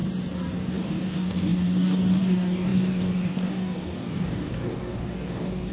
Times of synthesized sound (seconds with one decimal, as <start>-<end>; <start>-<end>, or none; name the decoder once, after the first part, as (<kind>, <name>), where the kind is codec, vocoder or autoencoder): 0.7-5.7 (codec, DAC)